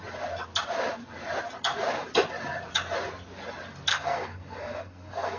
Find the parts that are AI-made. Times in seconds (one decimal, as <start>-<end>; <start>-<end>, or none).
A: 3.9-5.4